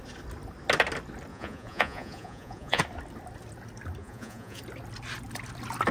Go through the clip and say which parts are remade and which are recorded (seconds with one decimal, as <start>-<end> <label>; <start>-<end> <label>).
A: 0.0-1.3 recorded; 1.3-2.8 remade; 2.8-4.0 recorded; 4.0-4.6 remade; 4.6-5.9 recorded